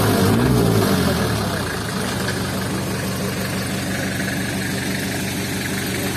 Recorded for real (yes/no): yes